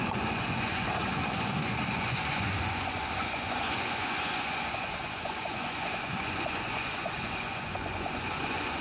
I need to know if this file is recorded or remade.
remade